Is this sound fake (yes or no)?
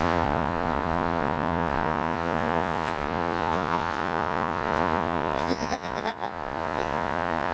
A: yes